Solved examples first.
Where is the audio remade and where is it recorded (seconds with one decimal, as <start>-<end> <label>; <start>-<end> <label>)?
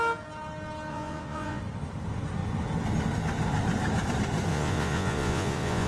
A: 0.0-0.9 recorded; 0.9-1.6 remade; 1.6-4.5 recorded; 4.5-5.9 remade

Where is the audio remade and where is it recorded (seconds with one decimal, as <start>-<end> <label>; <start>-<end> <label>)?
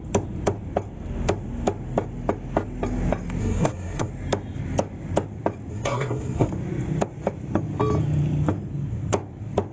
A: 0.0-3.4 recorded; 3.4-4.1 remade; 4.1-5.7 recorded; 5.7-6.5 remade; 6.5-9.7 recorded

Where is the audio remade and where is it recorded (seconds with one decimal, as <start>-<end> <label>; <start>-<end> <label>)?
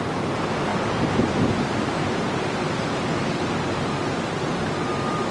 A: 0.0-0.7 recorded; 0.7-3.9 remade; 3.9-5.3 recorded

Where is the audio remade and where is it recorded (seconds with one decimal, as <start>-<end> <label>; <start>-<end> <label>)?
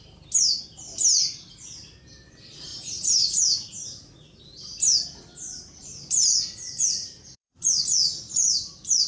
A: 0.0-2.7 recorded; 2.7-4.4 remade; 4.4-5.8 recorded; 5.8-9.1 remade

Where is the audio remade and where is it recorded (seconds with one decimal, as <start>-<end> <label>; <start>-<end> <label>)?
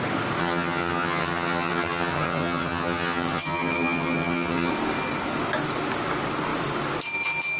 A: 0.0-0.4 recorded; 0.4-4.7 remade; 4.7-7.6 recorded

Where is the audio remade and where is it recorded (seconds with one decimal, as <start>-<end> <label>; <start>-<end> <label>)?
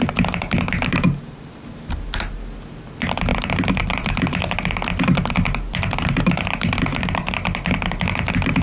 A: 0.0-3.3 recorded; 3.3-4.1 remade; 4.1-8.6 recorded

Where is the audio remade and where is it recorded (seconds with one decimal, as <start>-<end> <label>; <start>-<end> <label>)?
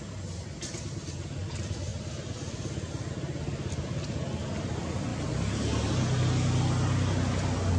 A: 0.0-7.8 recorded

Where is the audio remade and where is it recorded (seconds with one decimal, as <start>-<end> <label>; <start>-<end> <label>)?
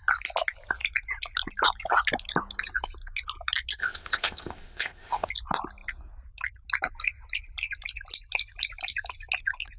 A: 0.0-3.8 recorded; 3.8-5.3 remade; 5.3-9.8 recorded